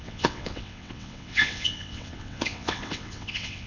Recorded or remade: remade